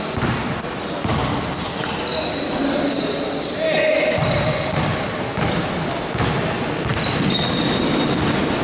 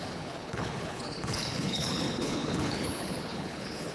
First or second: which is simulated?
second